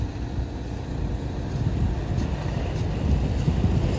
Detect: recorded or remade recorded